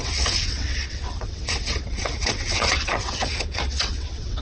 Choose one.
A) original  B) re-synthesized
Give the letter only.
B